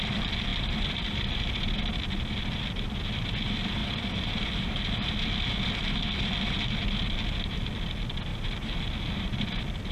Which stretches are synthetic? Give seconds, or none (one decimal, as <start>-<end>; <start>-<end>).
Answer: none

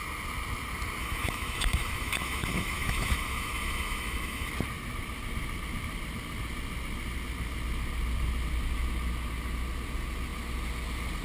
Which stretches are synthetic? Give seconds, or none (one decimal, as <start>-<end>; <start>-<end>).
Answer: 1.0-4.5

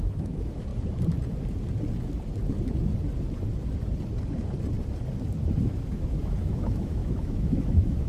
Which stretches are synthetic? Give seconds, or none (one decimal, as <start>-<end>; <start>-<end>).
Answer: 0.0-0.7; 5.6-8.1

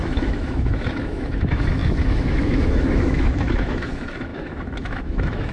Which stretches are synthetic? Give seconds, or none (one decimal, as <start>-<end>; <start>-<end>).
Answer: 0.0-5.5

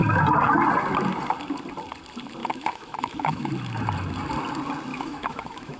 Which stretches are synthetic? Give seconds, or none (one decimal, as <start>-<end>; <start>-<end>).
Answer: 2.4-3.5; 4.9-5.8

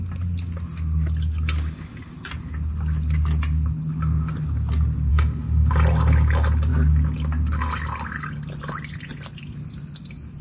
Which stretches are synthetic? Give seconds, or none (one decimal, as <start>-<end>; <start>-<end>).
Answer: 5.1-5.7